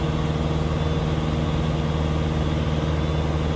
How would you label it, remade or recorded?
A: recorded